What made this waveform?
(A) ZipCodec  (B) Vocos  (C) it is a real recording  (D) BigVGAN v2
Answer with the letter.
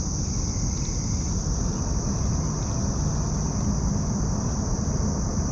C